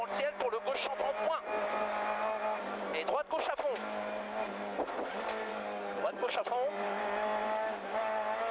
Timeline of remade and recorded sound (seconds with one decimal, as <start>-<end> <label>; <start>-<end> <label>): 0.0-5.5 recorded; 5.5-7.0 remade; 7.0-8.5 recorded

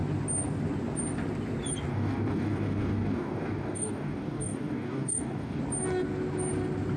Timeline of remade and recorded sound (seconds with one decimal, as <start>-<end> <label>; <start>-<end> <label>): 0.0-1.9 recorded; 1.9-5.6 remade; 5.6-7.0 recorded